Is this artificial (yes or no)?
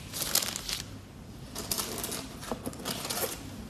no